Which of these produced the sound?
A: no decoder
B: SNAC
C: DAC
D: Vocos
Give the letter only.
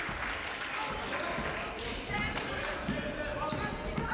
A